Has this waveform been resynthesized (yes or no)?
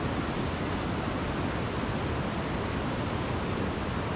no